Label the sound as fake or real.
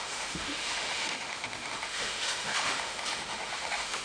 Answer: fake